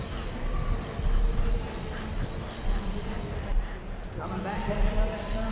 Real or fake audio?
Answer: real